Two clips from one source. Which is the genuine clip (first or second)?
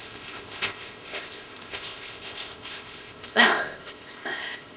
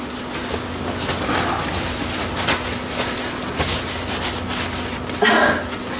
second